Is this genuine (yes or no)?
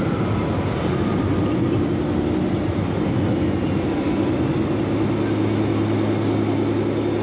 yes